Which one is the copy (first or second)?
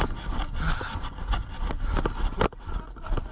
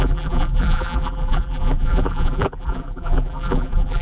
second